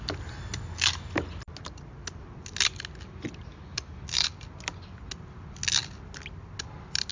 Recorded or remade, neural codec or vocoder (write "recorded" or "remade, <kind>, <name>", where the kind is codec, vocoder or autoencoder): recorded